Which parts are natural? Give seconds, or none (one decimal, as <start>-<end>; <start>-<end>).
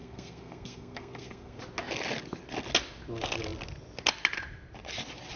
1.6-5.4